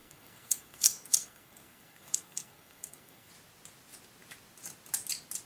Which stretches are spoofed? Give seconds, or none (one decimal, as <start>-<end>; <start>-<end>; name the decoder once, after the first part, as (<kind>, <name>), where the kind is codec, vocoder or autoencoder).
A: 0.0-3.3 (codec, SNAC)